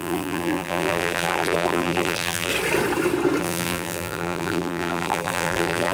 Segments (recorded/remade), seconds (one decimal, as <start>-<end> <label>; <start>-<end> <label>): 0.0-2.5 remade; 2.5-3.4 recorded; 3.4-5.9 remade